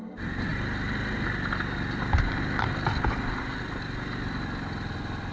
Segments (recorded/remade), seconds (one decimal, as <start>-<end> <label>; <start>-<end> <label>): 0.0-5.3 recorded